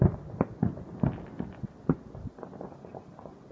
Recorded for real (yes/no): yes